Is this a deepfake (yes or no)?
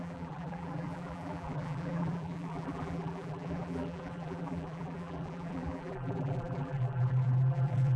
yes